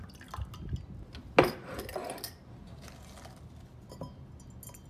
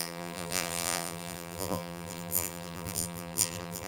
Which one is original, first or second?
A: first